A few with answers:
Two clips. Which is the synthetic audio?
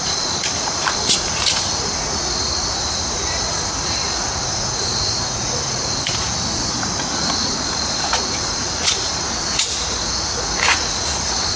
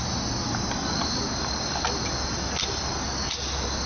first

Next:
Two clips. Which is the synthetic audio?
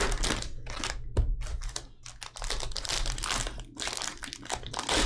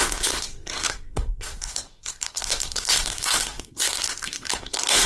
second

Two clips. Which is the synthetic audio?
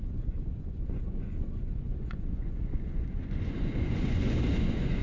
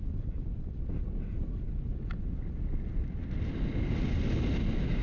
first